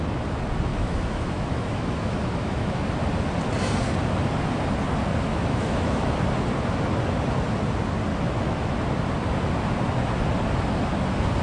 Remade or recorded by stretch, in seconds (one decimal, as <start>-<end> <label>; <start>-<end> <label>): 0.0-0.7 recorded; 0.7-2.8 remade; 2.8-5.3 recorded; 5.3-6.2 remade; 6.2-8.1 recorded; 8.1-8.7 remade; 8.7-11.4 recorded